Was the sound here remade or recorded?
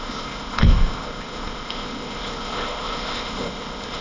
remade